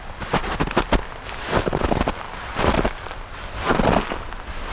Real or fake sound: real